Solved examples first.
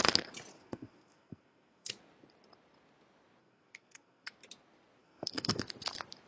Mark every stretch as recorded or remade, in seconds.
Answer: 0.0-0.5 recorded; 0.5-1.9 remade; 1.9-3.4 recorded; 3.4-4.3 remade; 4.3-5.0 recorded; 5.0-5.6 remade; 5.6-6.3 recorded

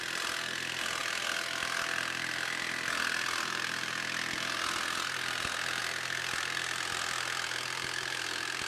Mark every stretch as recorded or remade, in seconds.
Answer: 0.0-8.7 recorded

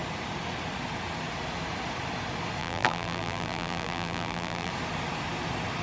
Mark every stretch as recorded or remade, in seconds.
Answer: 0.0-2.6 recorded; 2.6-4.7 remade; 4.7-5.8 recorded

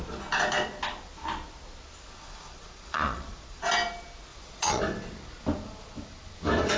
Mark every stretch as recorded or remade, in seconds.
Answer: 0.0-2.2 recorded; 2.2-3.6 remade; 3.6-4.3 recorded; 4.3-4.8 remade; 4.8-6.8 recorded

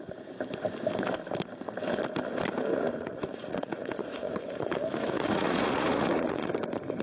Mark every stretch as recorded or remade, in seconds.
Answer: 0.0-2.7 recorded; 2.7-6.5 remade; 6.5-7.0 recorded

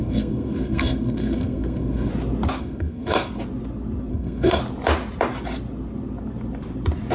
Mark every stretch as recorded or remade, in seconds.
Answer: 0.0-2.1 remade; 2.1-2.6 recorded; 2.6-3.4 remade; 3.4-4.1 recorded; 4.1-4.6 remade; 4.6-7.1 recorded

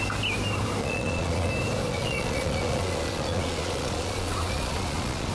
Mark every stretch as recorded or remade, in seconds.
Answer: 0.0-0.8 recorded; 0.8-1.5 remade; 1.5-1.9 recorded; 1.9-5.3 remade

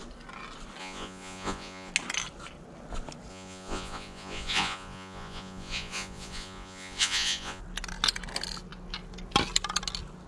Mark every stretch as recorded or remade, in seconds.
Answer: 0.0-0.8 recorded; 0.8-1.9 remade; 1.9-3.3 recorded; 3.3-7.6 remade; 7.6-10.3 recorded